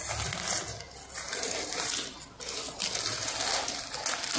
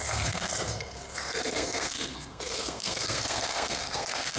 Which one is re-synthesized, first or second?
second